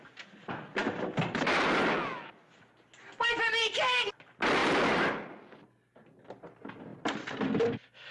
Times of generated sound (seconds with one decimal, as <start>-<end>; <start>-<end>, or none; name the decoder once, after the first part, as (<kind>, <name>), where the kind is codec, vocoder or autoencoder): none